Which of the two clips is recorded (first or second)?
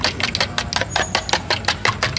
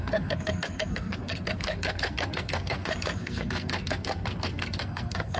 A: first